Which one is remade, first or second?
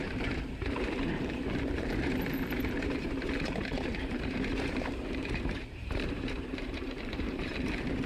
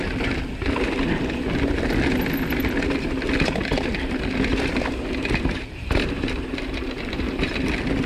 first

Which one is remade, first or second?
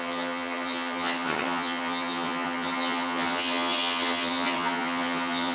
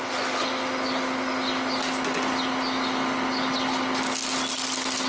first